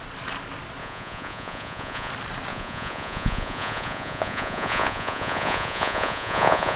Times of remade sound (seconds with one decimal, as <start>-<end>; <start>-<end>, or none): 0.8-2.1; 2.5-6.8